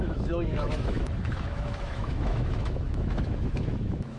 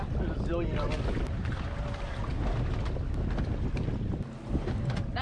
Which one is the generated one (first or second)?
first